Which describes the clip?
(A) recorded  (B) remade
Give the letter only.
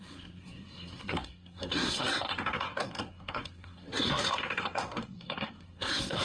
B